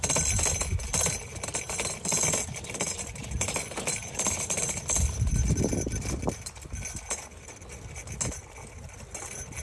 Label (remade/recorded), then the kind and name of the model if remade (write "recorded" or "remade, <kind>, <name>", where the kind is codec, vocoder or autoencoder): recorded